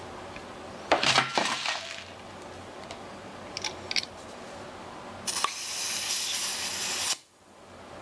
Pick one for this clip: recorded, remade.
recorded